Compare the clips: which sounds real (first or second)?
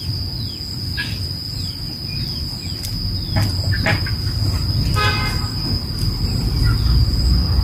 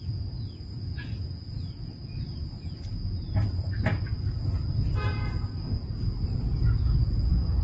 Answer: first